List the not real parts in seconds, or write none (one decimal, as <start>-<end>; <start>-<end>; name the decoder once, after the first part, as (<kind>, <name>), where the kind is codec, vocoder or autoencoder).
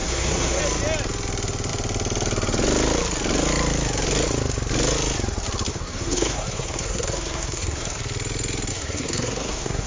0.0-0.6 (codec, SNAC); 5.7-8.0; 8.7-9.9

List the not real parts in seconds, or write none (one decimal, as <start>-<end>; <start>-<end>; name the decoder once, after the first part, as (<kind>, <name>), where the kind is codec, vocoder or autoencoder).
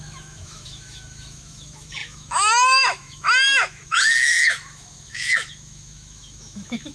0.0-6.9 (autoencoder, DAC-VAE)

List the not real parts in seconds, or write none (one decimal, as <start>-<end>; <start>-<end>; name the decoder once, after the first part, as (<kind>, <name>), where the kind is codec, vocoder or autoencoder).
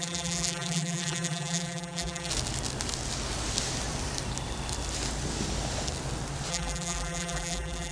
0.0-2.3 (vocoder, BigVGAN v2); 6.5-7.9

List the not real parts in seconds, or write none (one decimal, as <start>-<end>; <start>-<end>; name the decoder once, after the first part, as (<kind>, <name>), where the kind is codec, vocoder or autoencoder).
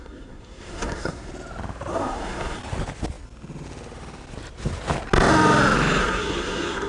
0.0-1.3 (codec, SNAC); 1.9-2.6; 6.0-6.9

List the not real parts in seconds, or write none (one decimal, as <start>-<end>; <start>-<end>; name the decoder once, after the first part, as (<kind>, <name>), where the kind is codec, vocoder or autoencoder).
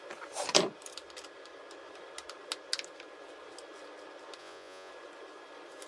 4.4-4.9 (vocoder, Vocos)